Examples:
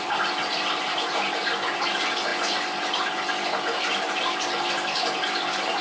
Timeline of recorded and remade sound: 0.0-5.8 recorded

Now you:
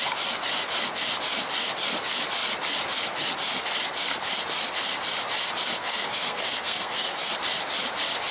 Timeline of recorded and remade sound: 0.0-5.8 recorded; 5.8-7.3 remade; 7.3-8.3 recorded